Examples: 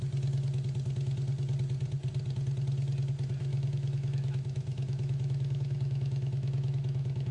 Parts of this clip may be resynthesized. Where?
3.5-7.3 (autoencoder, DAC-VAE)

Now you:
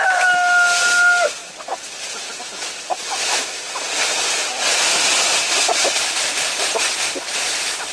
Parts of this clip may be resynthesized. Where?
none

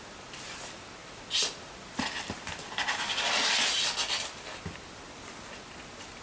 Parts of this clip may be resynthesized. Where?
none

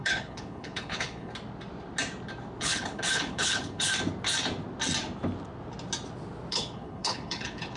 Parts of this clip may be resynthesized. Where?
0.0-1.3 (codec, HILCodec); 2.6-3.9; 6.5-7.8

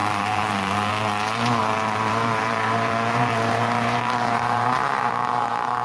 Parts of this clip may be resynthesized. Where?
0.0-0.9 (vocoder, BigVGAN v2); 1.6-5.1

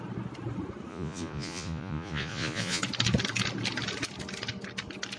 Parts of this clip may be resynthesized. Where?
0.9-2.8 (vocoder, Vocos)

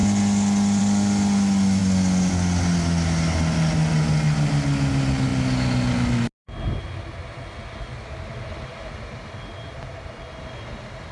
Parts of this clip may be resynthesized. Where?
none